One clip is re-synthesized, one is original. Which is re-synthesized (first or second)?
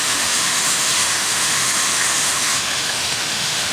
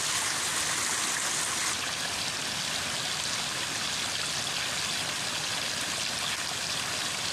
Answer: first